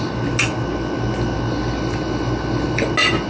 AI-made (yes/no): no